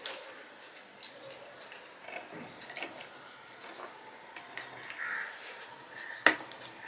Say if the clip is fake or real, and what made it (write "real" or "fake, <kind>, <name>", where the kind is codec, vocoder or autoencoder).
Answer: real